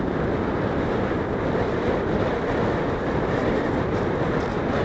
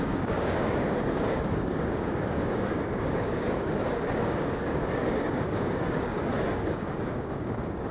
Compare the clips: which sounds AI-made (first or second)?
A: second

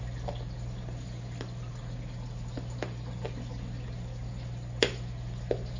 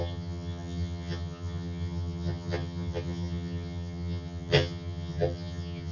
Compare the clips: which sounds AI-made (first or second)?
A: second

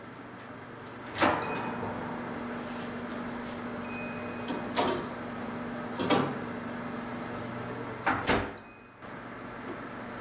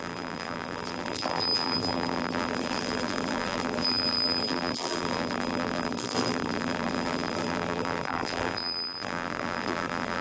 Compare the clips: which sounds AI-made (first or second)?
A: second